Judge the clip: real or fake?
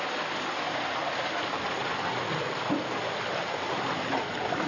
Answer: real